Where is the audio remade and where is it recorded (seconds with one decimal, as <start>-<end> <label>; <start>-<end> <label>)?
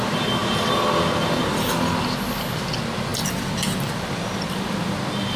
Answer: 0.0-0.4 recorded; 0.4-1.4 remade; 1.4-3.1 recorded; 3.1-5.4 remade